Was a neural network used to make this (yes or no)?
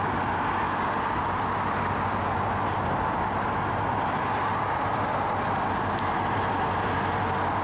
no